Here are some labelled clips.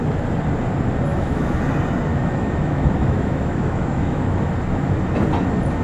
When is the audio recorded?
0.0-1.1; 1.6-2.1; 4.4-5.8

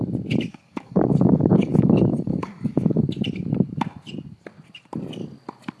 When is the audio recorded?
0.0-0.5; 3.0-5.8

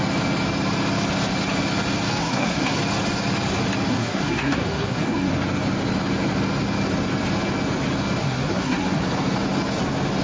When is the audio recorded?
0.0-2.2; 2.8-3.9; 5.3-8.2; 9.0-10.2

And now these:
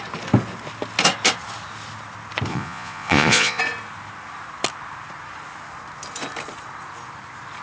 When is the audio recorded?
0.0-2.5; 3.6-7.6

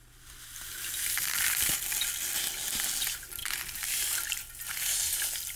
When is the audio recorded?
0.0-3.4; 4.3-5.6

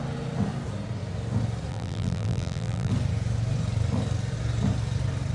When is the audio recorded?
0.0-1.7; 2.9-5.3